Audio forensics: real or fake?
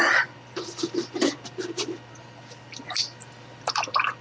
fake